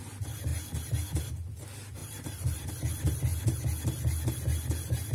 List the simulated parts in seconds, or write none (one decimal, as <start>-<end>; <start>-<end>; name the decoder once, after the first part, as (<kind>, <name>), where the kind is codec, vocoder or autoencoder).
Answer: 2.0-2.7 (vocoder, BigVGAN v2)